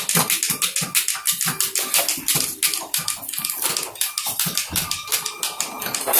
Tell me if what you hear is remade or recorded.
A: recorded